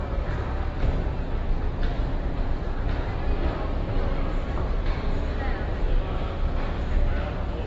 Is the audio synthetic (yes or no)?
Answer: no